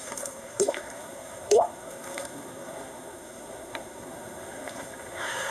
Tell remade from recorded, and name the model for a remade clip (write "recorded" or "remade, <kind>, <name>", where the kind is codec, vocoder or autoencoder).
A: remade, codec, SNAC